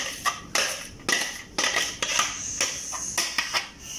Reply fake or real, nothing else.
real